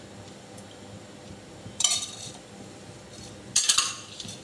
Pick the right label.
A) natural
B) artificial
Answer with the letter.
B